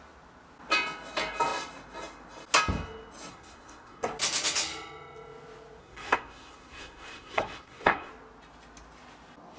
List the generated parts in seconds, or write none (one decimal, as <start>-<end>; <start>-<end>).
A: 3.3-4.1; 5.8-8.1